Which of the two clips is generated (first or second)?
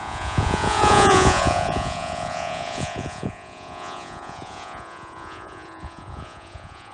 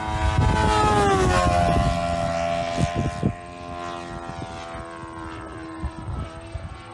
first